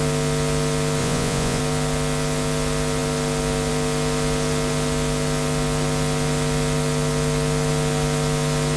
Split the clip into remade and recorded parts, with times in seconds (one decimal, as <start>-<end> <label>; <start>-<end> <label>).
0.0-1.0 recorded; 1.0-1.6 remade; 1.6-8.8 recorded